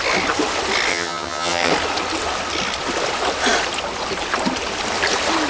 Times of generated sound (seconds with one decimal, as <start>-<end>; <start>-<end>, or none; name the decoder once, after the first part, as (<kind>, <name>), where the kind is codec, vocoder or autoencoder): 0.9-1.7 (vocoder, HiFi-GAN)